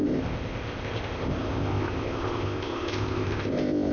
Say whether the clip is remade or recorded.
remade